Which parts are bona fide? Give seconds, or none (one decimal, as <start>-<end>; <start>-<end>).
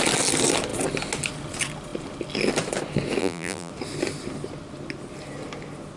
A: 0.0-3.2; 3.7-6.0